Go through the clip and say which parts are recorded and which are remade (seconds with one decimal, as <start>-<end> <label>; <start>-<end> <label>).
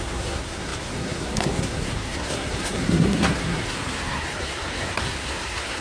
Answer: 0.0-5.8 remade